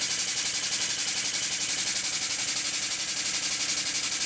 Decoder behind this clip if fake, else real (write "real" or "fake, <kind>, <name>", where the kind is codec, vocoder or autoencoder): real